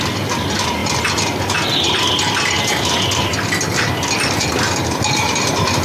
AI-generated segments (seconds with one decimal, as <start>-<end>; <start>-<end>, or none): none